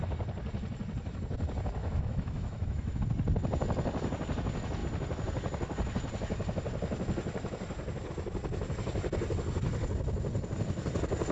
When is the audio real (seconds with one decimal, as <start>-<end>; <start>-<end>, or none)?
0.0-1.8; 3.0-11.3